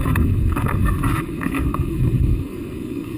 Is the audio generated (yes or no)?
yes